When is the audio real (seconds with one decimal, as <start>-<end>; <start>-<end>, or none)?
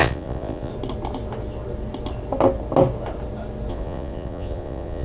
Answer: 0.7-3.7